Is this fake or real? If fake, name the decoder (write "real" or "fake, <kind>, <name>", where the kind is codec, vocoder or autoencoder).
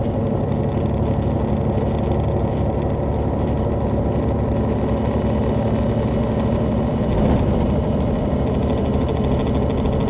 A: real